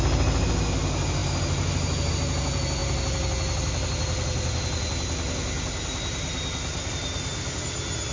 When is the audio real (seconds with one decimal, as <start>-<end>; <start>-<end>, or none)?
0.0-8.1